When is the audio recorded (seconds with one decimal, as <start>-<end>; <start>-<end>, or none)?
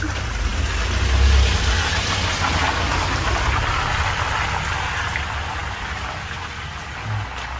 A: 0.0-7.6